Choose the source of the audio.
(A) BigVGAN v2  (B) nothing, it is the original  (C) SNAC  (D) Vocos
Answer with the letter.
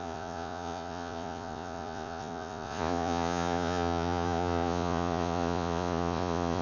D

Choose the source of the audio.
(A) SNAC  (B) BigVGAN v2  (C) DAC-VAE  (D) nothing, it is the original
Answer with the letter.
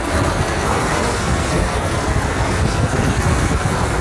A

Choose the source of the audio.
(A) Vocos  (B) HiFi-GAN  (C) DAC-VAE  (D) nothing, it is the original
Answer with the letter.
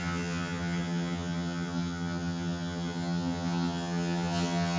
B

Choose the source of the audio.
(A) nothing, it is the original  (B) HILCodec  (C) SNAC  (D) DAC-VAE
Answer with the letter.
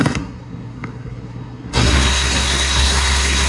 C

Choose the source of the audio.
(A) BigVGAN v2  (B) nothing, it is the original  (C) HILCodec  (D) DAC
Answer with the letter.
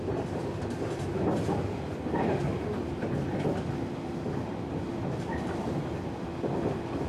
B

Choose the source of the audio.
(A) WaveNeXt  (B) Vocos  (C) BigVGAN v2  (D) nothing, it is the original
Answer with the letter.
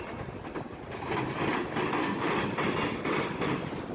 D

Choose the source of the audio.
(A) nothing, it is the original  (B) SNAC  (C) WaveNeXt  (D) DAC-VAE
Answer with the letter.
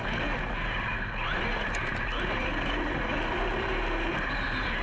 A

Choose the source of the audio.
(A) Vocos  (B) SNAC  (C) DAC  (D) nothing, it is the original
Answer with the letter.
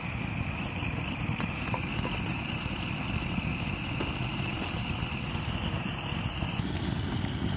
D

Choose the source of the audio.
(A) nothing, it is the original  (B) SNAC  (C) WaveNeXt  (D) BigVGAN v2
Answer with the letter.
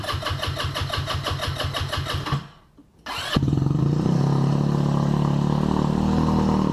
A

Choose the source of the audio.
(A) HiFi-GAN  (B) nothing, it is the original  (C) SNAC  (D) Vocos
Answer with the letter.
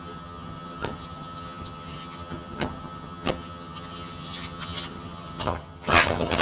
A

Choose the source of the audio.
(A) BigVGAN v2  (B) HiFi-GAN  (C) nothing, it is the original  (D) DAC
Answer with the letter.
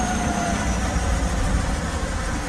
A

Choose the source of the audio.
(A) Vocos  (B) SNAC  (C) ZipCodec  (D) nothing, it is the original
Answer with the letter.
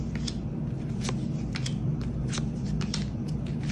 D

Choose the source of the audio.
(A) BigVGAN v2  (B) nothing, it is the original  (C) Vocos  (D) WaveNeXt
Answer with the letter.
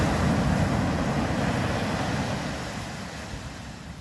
B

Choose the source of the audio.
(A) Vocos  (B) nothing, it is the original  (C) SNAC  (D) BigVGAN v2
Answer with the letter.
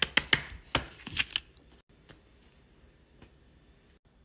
B